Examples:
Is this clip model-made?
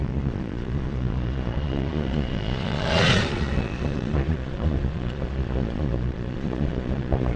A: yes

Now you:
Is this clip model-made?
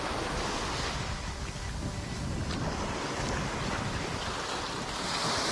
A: no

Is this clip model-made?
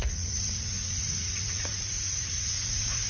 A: yes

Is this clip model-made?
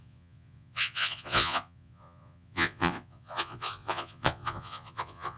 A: yes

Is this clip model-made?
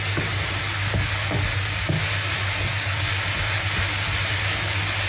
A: no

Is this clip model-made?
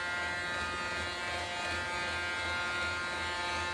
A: no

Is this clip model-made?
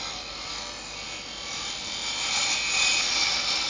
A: no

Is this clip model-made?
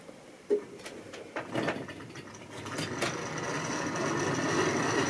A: no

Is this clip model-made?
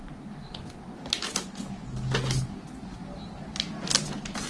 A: no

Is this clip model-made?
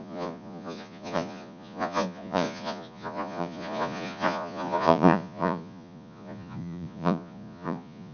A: yes